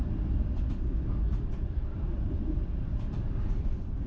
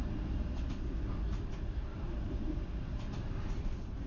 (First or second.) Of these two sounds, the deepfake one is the first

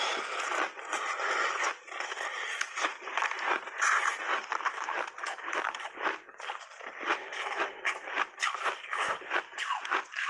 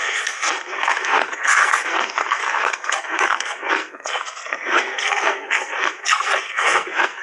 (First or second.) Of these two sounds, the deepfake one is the second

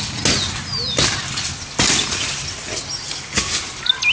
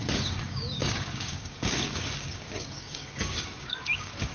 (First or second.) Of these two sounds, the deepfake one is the second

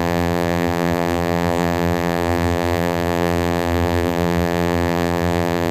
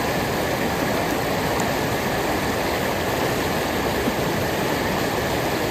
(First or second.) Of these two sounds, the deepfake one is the first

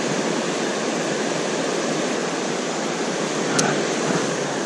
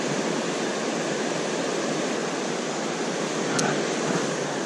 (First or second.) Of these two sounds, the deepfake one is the first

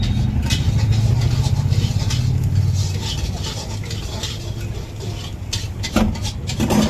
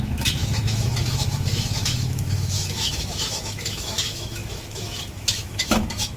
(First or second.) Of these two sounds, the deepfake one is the second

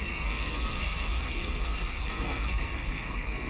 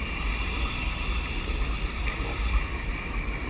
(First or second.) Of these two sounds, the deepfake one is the first